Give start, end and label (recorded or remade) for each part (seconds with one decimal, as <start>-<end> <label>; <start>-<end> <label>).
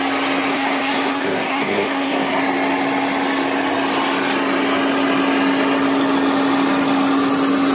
0.0-0.5 recorded; 0.5-2.4 remade; 2.4-7.7 recorded